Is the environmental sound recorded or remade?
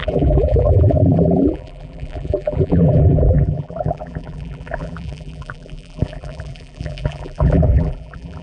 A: remade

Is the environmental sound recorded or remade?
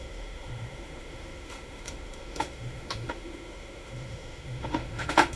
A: remade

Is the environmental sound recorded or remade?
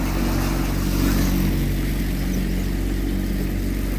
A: recorded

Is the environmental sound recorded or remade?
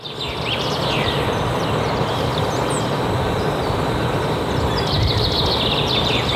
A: remade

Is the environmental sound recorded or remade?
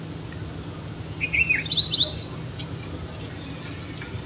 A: recorded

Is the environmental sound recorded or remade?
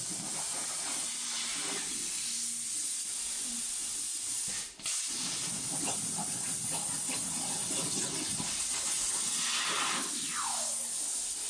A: recorded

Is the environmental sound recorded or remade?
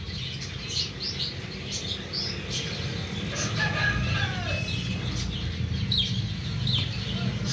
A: recorded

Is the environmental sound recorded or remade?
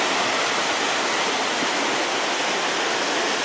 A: recorded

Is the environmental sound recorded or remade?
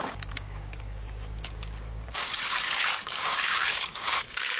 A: remade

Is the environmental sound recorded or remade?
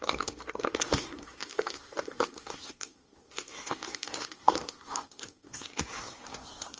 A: remade